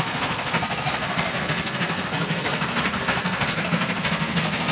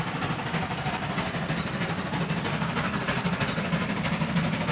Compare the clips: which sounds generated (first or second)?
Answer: first